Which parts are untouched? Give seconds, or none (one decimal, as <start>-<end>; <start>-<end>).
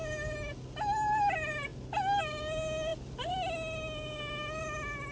0.0-5.1